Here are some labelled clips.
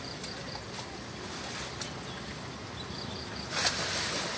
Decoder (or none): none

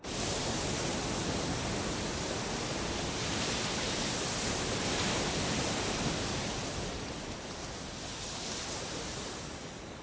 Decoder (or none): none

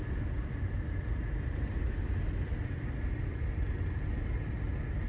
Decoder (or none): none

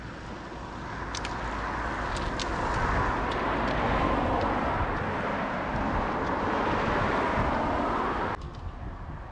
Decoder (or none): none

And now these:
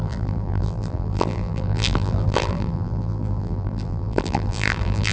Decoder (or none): vocoder, BigVGAN v2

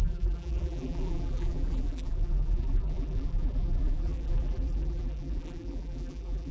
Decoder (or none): vocoder, BigVGAN v2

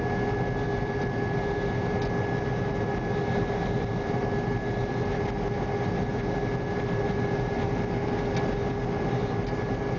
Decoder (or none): none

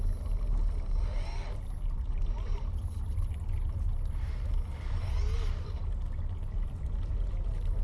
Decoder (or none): none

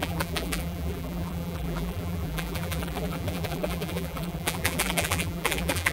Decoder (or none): vocoder, BigVGAN v2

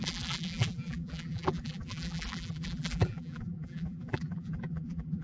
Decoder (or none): vocoder, BigVGAN v2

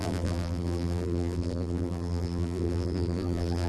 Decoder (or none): vocoder, BigVGAN v2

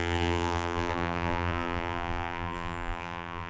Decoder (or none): vocoder, BigVGAN v2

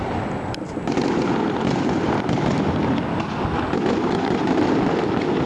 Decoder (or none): vocoder, BigVGAN v2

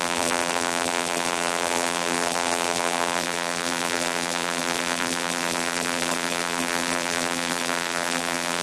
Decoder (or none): vocoder, BigVGAN v2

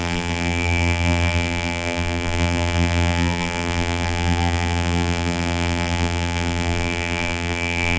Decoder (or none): vocoder, BigVGAN v2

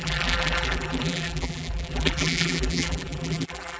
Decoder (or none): vocoder, BigVGAN v2